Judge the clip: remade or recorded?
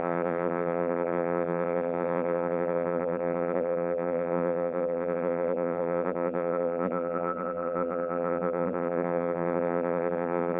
remade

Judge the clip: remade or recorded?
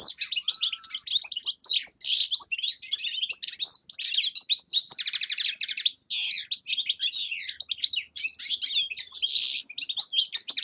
recorded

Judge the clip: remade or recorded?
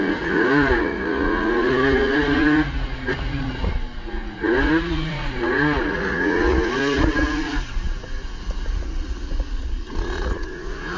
remade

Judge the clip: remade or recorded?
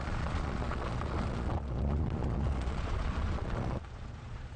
remade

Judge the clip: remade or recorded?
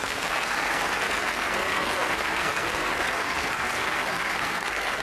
remade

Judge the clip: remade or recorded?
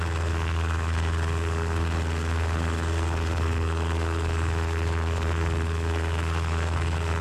remade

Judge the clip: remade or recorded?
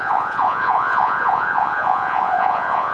remade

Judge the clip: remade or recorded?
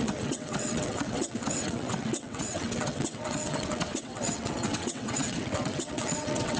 remade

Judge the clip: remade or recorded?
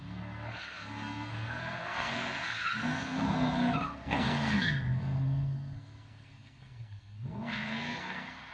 remade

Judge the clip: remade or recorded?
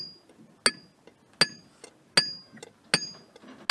recorded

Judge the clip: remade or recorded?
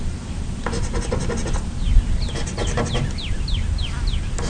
recorded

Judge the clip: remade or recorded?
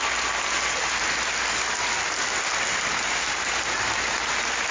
recorded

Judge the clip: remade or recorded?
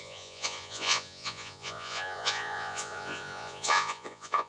remade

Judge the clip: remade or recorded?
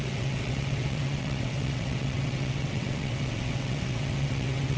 remade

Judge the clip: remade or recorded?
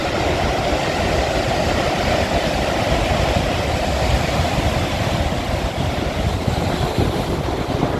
recorded